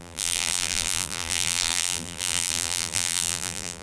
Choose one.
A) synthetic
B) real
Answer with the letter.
A